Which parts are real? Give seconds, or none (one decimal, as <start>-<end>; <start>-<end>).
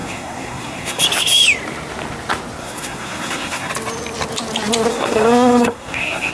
1.0-2.6; 3.7-4.9